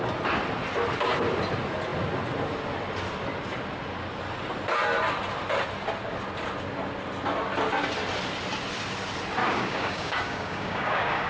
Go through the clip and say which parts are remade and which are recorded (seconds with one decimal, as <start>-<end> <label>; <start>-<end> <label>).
0.0-9.4 recorded; 9.4-11.3 remade